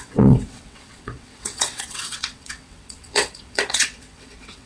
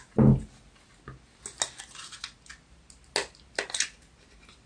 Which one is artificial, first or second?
first